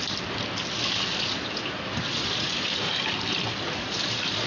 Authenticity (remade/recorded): recorded